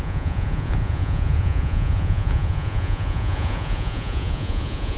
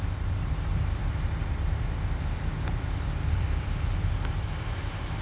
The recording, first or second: second